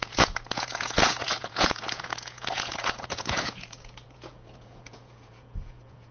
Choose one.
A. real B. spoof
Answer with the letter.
B